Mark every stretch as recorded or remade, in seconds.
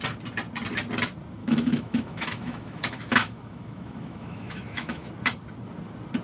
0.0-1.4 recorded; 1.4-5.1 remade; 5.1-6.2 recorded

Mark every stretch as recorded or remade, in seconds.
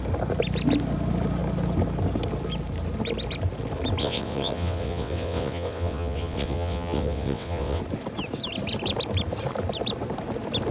0.0-4.0 recorded; 4.0-7.8 remade; 7.8-10.7 recorded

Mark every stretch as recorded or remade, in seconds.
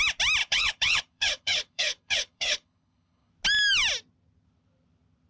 0.0-0.4 recorded; 0.4-3.3 remade; 3.3-5.3 recorded